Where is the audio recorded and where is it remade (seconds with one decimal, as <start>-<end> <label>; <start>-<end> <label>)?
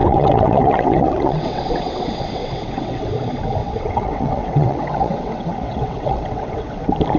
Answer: 0.0-3.1 remade; 3.1-3.6 recorded; 3.6-6.8 remade; 6.8-7.2 recorded